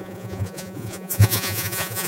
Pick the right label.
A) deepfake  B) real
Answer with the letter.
A